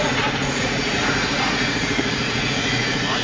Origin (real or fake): fake